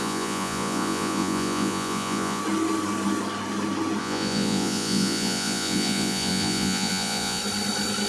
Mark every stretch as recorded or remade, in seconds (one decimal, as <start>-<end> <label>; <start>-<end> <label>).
0.0-2.4 remade; 2.4-4.0 recorded; 4.0-7.4 remade; 7.4-8.1 recorded

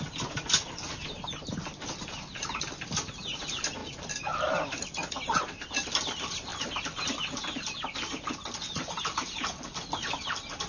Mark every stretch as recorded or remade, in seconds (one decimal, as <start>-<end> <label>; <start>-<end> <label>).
0.0-3.8 recorded; 3.8-5.7 remade; 5.7-6.5 recorded; 6.5-8.3 remade; 8.3-10.7 recorded

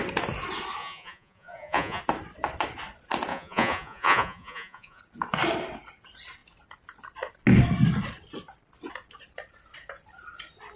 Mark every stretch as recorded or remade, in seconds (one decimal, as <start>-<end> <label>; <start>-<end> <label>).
0.0-0.8 recorded; 0.8-2.0 remade; 2.0-3.3 recorded; 3.3-5.0 remade; 5.0-10.8 recorded

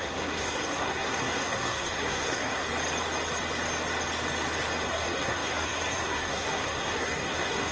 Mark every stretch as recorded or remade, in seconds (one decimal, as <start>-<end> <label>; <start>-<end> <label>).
0.0-2.7 remade; 2.7-4.8 recorded; 4.8-7.7 remade

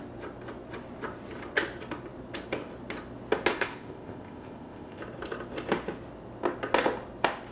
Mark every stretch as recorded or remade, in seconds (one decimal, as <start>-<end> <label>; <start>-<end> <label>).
0.0-3.5 recorded; 3.5-5.0 remade; 5.0-7.5 recorded

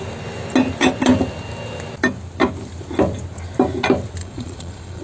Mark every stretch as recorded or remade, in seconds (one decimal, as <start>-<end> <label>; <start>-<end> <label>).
0.0-4.2 recorded; 4.2-5.0 remade

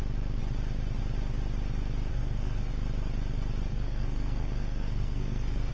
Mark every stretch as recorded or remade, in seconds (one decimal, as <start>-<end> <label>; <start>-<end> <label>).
0.0-2.1 recorded; 2.1-2.7 remade; 2.7-3.7 recorded; 3.7-5.7 remade

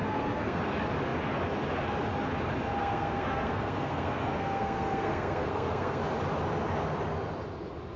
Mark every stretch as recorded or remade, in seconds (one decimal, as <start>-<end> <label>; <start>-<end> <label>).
0.0-0.6 remade; 0.6-2.8 recorded; 2.8-6.0 remade; 6.0-8.0 recorded